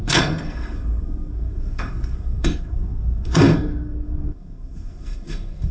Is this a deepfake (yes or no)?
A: yes